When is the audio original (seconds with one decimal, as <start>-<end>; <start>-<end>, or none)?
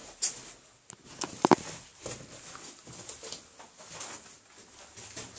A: 0.0-5.4